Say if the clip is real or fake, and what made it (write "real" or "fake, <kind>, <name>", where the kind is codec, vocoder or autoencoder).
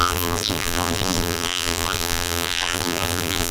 fake, vocoder, BigVGAN v2